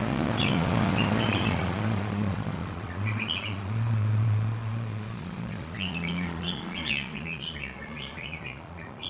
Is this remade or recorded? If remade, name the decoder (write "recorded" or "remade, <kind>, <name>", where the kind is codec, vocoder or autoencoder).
remade, vocoder, Vocos